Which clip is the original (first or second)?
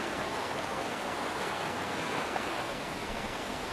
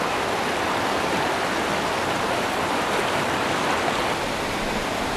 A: second